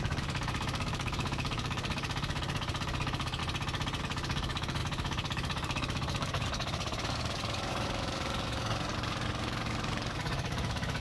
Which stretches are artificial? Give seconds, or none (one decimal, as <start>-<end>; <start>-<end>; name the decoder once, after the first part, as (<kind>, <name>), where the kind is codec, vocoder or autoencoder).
0.0-3.4 (codec, DAC); 4.0-11.0